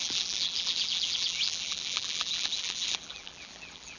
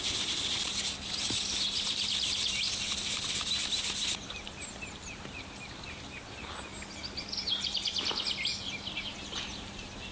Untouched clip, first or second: second